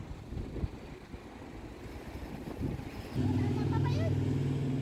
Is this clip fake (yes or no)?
no